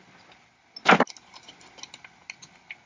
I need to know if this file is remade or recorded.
recorded